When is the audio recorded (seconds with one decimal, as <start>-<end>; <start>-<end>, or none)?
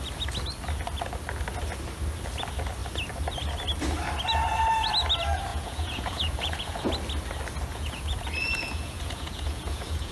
0.0-5.5; 6.9-7.7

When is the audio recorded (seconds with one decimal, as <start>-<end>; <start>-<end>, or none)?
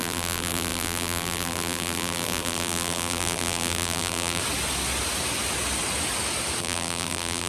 4.4-6.6